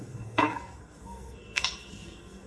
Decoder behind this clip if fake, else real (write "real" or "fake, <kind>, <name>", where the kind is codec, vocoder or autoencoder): fake, codec, SNAC